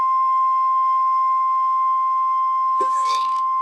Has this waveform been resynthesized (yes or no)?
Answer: yes